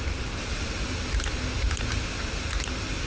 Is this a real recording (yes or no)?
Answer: yes